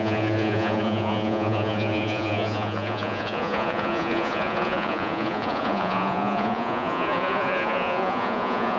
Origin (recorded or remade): remade